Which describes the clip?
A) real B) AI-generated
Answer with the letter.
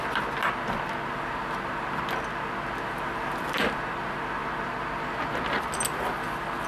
A